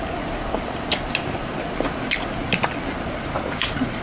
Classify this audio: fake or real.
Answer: fake